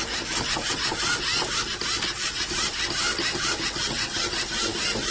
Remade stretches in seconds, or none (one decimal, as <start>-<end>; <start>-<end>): none